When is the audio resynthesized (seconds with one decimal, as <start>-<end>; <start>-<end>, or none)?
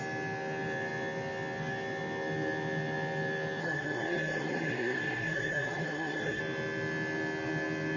3.6-6.4